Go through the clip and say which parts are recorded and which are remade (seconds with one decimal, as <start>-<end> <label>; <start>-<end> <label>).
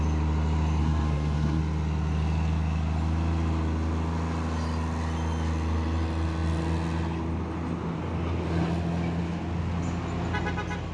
0.0-0.8 recorded; 0.8-1.6 remade; 1.6-10.9 recorded